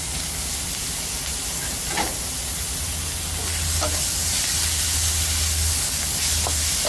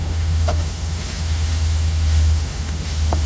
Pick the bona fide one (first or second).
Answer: first